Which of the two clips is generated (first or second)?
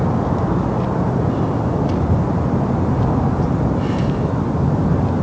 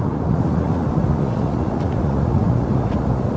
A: second